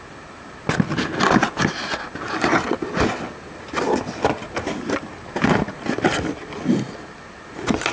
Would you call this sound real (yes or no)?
yes